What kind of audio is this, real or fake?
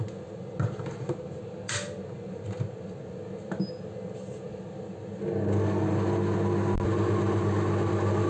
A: real